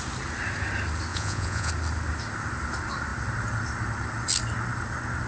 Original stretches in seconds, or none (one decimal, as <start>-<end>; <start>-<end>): 0.0-1.1; 1.7-5.3